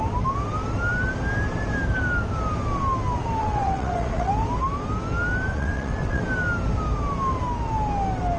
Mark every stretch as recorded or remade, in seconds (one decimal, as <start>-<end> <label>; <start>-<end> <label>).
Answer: 0.0-3.4 recorded; 3.4-4.3 remade; 4.3-5.5 recorded; 5.5-6.2 remade; 6.2-8.4 recorded

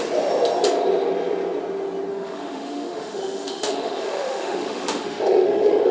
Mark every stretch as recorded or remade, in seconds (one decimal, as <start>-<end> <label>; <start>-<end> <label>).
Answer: 0.0-2.1 recorded; 2.1-5.9 remade

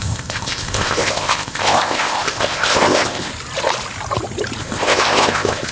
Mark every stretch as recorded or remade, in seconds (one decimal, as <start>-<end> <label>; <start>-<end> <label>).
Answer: 0.0-3.3 remade; 3.3-4.6 recorded; 4.6-5.7 remade

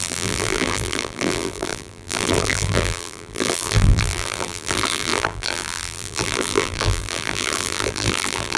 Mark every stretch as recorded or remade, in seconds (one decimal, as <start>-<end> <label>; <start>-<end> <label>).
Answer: 0.0-8.6 remade